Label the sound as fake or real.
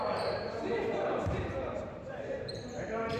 fake